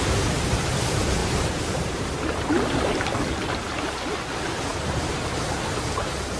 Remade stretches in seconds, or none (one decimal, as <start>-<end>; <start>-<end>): 1.2-2.5; 4.7-5.6